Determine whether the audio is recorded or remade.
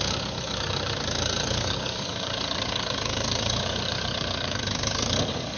remade